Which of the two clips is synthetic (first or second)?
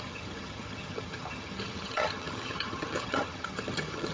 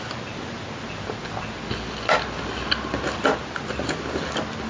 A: first